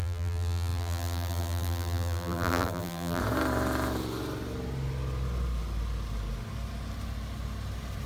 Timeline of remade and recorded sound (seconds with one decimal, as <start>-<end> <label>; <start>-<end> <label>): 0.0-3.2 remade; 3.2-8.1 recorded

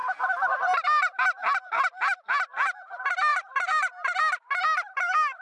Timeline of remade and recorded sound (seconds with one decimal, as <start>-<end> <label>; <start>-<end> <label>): 0.0-3.3 recorded; 3.3-4.6 remade; 4.6-5.4 recorded

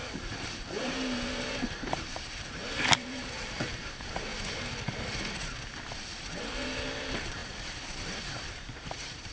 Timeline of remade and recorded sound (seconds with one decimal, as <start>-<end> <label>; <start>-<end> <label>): 0.0-4.3 remade; 4.3-6.5 recorded; 6.5-9.3 remade

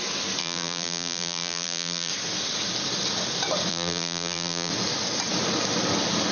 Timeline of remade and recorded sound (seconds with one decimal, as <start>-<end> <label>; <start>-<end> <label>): 0.0-0.4 recorded; 0.4-2.1 remade; 2.1-3.7 recorded; 3.7-4.7 remade; 4.7-6.3 recorded

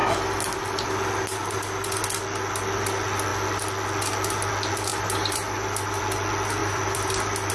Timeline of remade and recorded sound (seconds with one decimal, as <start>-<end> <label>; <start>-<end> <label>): 0.0-2.0 remade; 2.0-4.9 recorded; 4.9-6.0 remade; 6.0-6.6 recorded; 6.6-7.5 remade